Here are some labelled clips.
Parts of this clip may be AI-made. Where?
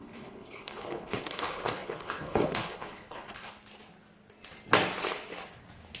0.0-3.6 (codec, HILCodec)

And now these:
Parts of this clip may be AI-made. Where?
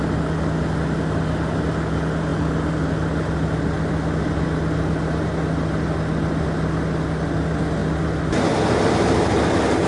none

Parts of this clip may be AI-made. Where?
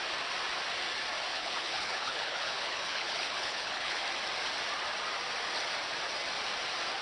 1.3-4.0 (codec, HILCodec)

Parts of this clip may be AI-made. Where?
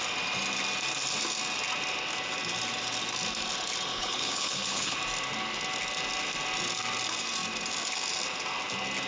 3.9-5.0 (codec, HILCodec)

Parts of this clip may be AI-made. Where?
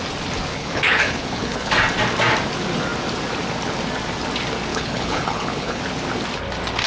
0.5-1.7 (codec, HILCodec); 4.7-5.8